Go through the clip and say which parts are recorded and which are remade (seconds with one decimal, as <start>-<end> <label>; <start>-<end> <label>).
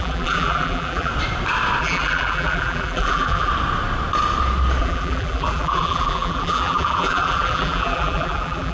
0.0-1.1 remade; 1.1-1.8 recorded; 1.8-3.5 remade; 3.5-4.8 recorded; 4.8-8.7 remade